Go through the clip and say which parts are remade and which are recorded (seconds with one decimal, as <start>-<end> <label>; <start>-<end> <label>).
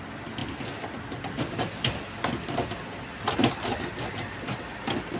0.0-5.2 recorded